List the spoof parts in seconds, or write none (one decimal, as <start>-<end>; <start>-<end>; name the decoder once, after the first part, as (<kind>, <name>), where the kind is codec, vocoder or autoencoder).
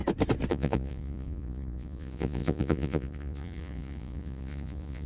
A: 0.5-5.1 (vocoder, Vocos)